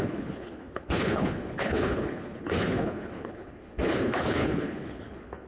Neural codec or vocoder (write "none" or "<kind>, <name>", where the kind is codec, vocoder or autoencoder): codec, HILCodec